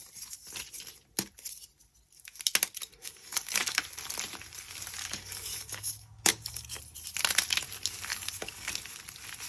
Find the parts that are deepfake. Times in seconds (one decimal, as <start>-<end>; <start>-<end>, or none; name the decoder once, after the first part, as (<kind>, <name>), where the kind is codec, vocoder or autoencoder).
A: 3.0-3.8 (codec, DAC); 5.0-6.8; 8.1-8.7

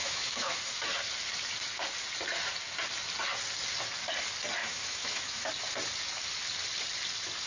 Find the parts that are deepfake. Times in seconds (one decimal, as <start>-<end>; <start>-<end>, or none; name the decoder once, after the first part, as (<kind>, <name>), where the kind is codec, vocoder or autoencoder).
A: 0.0-0.6 (autoencoder, DAC-VAE); 4.6-5.5

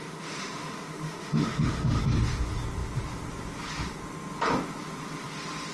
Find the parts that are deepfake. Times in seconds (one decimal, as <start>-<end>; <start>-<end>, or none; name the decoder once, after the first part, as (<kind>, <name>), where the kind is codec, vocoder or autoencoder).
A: 0.0-2.0 (autoencoder, DAC-VAE)

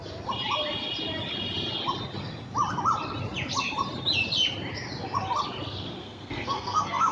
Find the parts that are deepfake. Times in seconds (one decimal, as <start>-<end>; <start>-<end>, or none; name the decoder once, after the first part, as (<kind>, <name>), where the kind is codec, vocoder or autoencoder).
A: 6.0-7.1 (codec, SNAC)

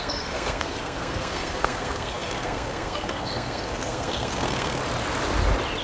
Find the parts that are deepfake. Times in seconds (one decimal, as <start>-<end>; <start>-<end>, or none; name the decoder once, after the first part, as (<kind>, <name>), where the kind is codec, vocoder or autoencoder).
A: 0.0-4.8 (codec, SNAC)